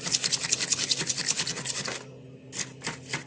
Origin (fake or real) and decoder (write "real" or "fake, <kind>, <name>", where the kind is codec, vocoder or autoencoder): real